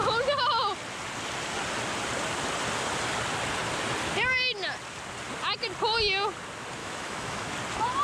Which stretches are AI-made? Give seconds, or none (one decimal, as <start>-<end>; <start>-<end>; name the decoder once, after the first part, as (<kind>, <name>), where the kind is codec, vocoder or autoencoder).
6.8-7.5 (autoencoder, DAC-VAE)